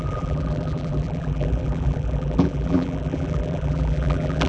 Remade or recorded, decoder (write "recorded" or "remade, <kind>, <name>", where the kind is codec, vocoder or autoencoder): remade, vocoder, BigVGAN v2